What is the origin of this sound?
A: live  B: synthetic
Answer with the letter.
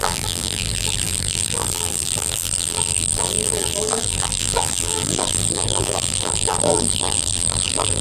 B